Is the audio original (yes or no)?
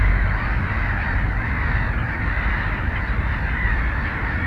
yes